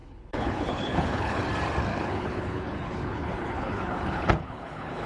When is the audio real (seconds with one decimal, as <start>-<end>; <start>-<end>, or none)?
1.4-1.9